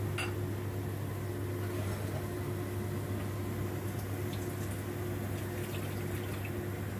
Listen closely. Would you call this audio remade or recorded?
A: recorded